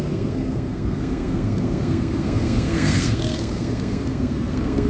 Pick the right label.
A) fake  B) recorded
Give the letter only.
A